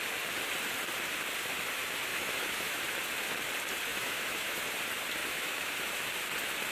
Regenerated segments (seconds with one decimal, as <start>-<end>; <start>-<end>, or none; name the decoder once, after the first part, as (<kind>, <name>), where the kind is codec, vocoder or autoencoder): 2.1-2.8 (autoencoder, DAC-VAE); 3.9-4.6; 5.2-5.9